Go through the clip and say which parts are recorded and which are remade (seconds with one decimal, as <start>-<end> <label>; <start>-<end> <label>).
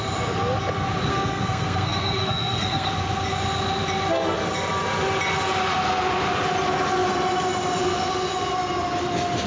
0.0-1.1 recorded; 1.1-2.9 remade; 2.9-9.5 recorded